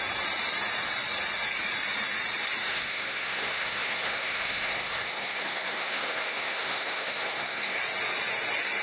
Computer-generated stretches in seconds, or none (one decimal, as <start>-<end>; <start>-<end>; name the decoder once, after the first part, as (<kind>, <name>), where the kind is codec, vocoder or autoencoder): 2.7-7.8 (codec, SNAC)